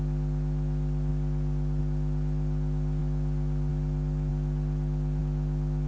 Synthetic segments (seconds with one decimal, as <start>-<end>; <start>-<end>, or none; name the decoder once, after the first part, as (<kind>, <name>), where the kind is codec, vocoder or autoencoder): none